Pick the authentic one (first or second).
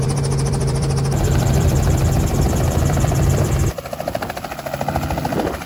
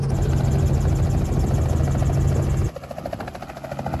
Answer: second